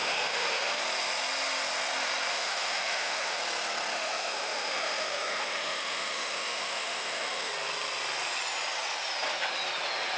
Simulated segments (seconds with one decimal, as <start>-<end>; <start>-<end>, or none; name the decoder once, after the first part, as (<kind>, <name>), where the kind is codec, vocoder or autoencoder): 0.0-0.8 (autoencoder, DAC-VAE); 2.3-3.4; 3.9-7.5